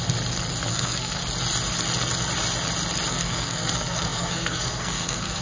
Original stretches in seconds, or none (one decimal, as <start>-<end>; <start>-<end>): 0.0-0.7; 1.2-3.1